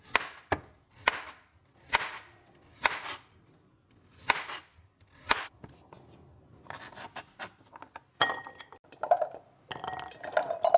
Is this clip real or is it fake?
real